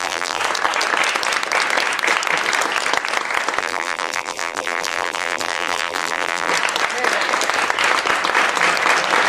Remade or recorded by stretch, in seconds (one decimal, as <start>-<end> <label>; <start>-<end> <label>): 0.0-0.4 remade; 0.4-3.6 recorded; 3.6-6.5 remade; 6.5-9.3 recorded